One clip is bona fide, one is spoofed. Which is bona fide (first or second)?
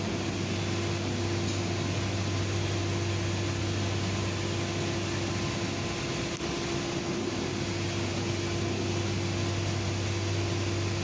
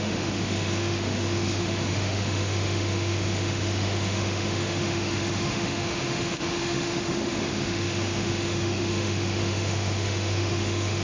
first